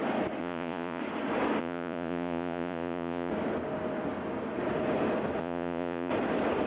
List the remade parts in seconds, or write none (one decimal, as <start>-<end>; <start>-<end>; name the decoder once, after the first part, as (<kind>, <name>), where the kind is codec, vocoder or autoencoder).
0.4-1.0 (vocoder, Vocos); 1.6-3.3; 5.4-6.1